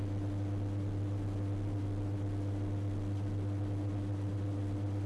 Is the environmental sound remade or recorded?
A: recorded